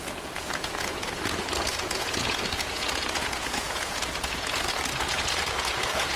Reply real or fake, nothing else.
fake